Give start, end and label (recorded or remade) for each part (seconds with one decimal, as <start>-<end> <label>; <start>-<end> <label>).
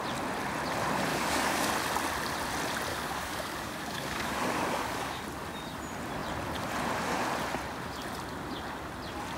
0.0-1.1 recorded; 1.1-1.7 remade; 1.7-2.9 recorded; 2.9-5.2 remade; 5.2-9.4 recorded